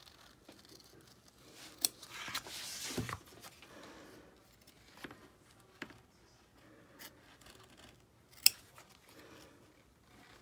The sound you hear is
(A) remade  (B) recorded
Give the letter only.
B